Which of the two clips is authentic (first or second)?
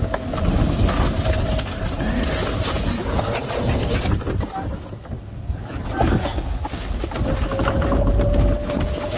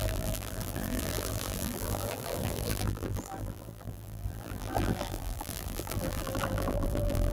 first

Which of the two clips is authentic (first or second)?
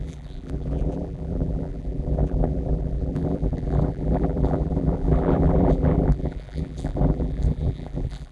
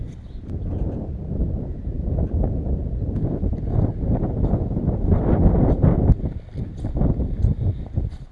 second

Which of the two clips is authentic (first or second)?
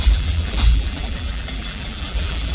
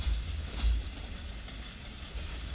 second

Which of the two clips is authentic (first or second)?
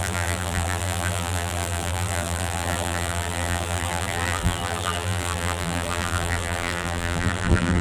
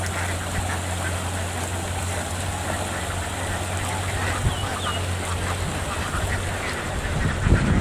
second